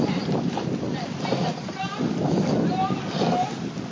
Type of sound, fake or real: real